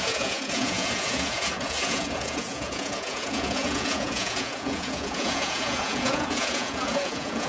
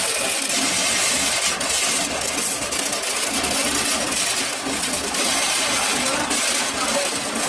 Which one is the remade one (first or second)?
first